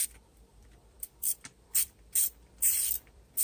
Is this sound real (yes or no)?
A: no